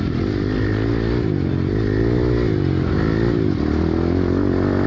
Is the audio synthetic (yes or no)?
no